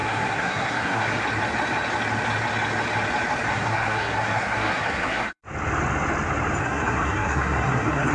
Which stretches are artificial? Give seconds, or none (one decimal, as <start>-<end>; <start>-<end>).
0.0-1.2; 3.5-5.4; 6.6-8.1